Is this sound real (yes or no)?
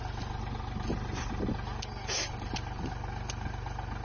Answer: yes